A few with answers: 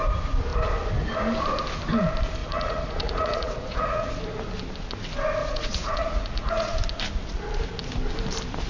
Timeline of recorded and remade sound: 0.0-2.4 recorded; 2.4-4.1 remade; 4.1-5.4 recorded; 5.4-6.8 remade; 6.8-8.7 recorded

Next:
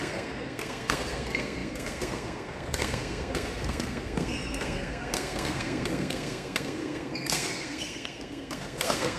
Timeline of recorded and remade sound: 0.0-9.2 remade

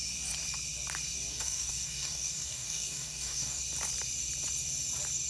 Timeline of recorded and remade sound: 0.0-1.3 recorded; 1.3-3.6 remade; 3.6-5.3 recorded

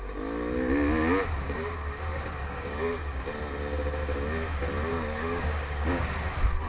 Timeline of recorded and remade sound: 0.0-2.4 recorded; 2.4-3.2 remade; 3.2-4.9 recorded; 4.9-6.0 remade; 6.0-6.7 recorded

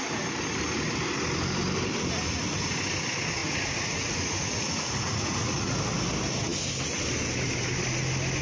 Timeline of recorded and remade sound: 0.0-3.4 recorded; 3.4-5.8 remade; 5.8-8.4 recorded

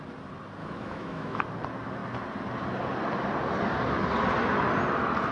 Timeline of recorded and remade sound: 0.0-0.6 recorded; 0.6-1.4 remade; 1.4-5.3 recorded

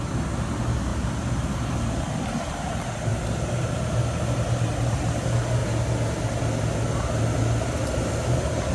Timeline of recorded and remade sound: 0.0-8.7 recorded